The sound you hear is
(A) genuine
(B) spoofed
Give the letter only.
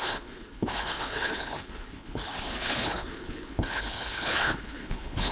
B